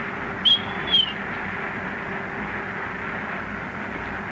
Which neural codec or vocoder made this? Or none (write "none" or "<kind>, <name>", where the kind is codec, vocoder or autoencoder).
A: none